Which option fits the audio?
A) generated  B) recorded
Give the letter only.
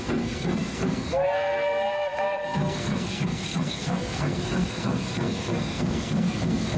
A